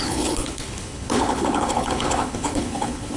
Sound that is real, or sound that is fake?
fake